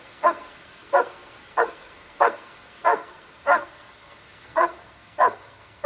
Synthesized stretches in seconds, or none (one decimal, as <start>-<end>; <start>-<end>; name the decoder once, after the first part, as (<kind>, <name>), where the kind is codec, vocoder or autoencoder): 0.0-5.9 (codec, SNAC)